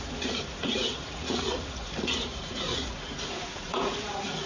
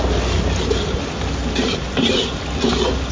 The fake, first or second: first